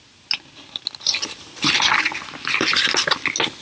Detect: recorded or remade recorded